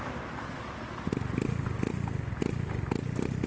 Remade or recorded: recorded